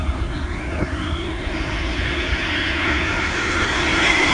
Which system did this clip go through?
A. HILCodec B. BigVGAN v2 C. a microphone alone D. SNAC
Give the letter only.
D